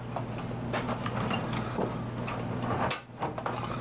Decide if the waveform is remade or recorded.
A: recorded